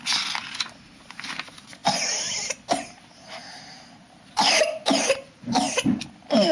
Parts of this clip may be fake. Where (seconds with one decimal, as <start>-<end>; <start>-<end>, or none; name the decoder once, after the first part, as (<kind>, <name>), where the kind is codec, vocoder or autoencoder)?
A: none